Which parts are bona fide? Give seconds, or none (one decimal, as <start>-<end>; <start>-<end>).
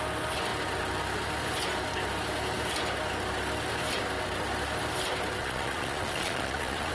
0.0-5.4